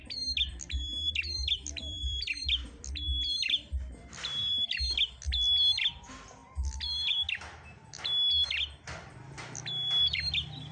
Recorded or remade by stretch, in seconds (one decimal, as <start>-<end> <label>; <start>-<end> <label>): 0.0-4.4 remade; 4.4-5.6 recorded; 5.6-6.4 remade; 6.4-8.8 recorded; 8.8-10.7 remade